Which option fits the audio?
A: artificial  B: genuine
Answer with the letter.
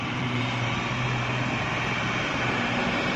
A